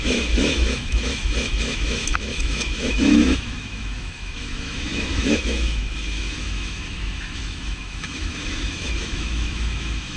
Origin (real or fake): fake